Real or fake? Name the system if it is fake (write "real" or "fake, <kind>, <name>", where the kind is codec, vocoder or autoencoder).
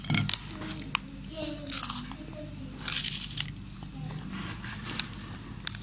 real